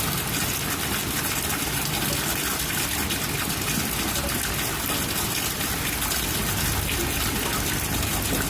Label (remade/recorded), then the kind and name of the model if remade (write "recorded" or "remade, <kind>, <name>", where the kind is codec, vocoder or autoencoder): recorded